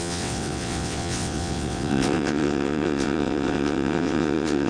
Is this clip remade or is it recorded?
remade